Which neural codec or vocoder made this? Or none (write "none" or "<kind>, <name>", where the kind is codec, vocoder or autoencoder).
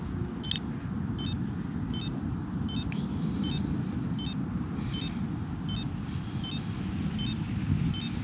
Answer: none